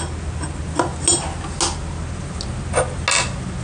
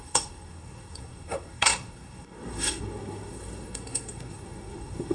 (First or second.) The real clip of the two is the first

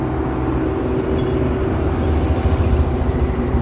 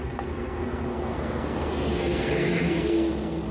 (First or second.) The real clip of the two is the first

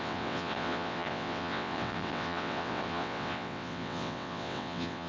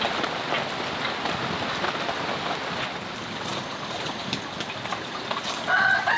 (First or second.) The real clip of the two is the second